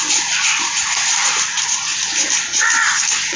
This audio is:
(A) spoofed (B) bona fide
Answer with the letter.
B